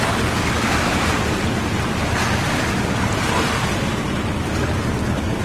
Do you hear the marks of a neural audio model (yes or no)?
no